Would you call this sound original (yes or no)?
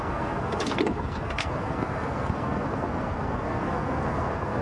no